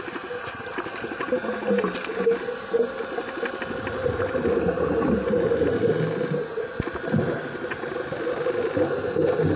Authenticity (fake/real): real